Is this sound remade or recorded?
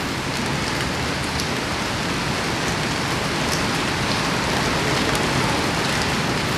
recorded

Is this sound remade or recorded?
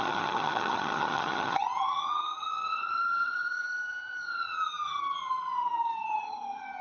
remade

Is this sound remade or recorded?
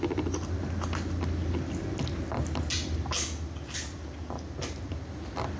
recorded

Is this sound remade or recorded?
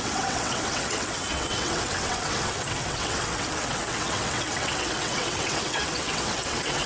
remade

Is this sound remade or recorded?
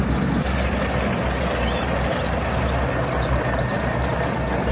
recorded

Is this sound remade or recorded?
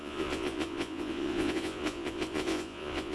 remade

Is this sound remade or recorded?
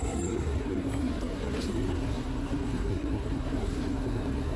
remade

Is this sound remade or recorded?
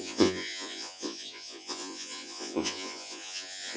remade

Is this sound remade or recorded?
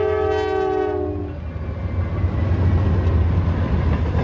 recorded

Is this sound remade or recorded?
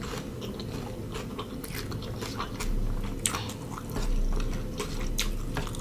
recorded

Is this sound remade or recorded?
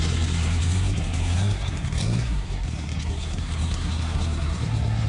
remade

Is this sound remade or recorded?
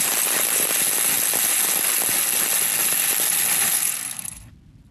recorded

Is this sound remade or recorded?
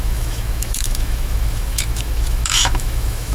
remade